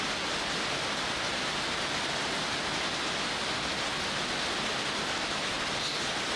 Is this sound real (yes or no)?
yes